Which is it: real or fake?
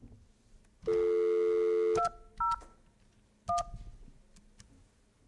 real